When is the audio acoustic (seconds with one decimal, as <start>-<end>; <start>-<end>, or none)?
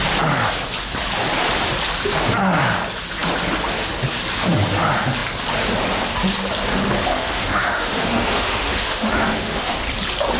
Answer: 0.0-7.1; 9.7-10.4